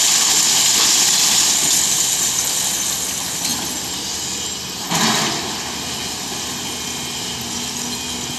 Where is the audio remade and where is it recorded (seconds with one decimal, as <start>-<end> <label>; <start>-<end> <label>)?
0.0-8.4 recorded